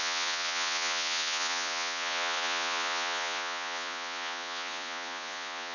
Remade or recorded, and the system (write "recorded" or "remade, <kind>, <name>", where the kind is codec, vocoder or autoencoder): remade, vocoder, Vocos